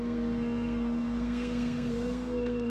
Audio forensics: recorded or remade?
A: remade